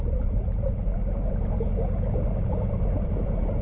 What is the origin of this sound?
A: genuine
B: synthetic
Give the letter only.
A